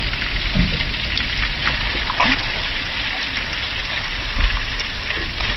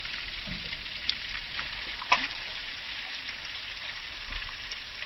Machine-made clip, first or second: second